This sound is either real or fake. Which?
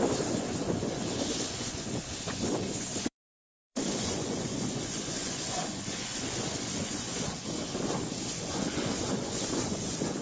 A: fake